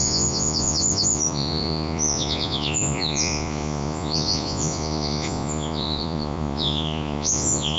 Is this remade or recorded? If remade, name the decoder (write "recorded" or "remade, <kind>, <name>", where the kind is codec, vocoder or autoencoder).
remade, vocoder, Vocos